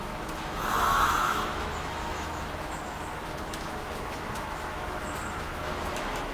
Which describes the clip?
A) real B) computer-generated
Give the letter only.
B